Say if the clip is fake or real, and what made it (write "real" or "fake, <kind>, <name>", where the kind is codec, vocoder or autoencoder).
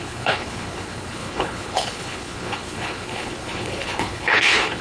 fake, codec, HILCodec